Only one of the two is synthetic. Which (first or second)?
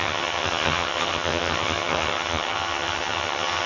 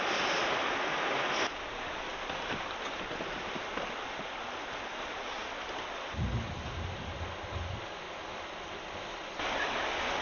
first